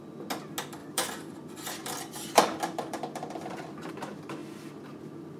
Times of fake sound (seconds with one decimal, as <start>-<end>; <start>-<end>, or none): 0.8-3.9